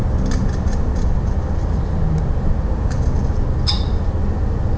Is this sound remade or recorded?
recorded